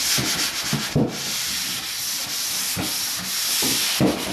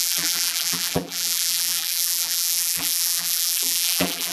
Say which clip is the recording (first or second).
first